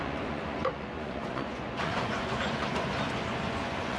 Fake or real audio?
fake